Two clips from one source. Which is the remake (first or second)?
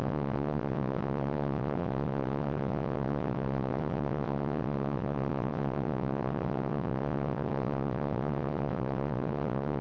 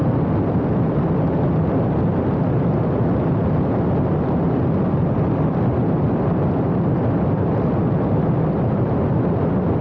first